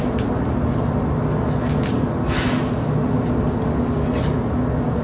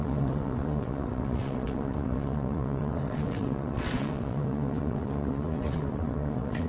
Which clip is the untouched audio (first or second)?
first